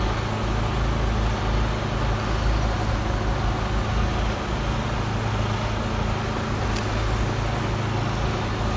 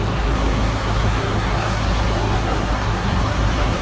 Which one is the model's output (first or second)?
second